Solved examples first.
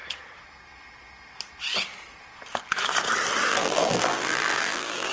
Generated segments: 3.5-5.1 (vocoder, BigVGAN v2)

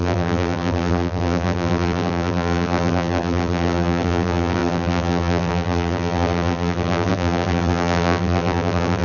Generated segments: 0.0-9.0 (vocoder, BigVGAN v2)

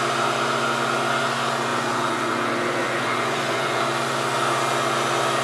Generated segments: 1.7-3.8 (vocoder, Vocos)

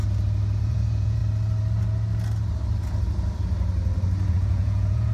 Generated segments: 0.6-1.2 (vocoder, Vocos); 4.3-5.1

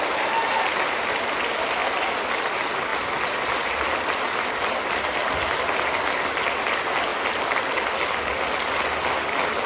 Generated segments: none